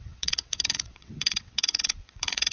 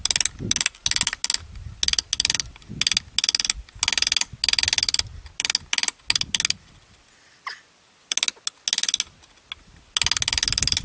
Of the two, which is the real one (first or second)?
second